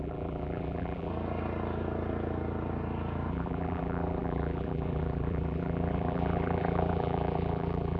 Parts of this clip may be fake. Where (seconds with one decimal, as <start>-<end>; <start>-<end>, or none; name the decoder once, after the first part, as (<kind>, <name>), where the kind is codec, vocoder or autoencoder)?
0.0-1.1 (vocoder, BigVGAN v2); 3.3-8.0